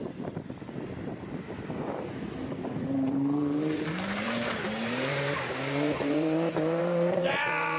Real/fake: fake